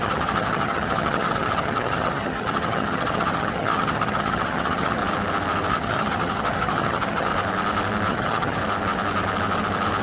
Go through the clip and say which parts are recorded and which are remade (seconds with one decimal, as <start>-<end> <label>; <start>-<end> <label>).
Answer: 0.0-5.0 remade; 5.0-5.7 recorded; 5.7-7.3 remade; 7.3-8.1 recorded; 8.1-8.6 remade; 8.6-10.0 recorded